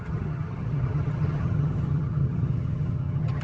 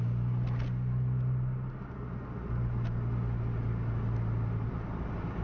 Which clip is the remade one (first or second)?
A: first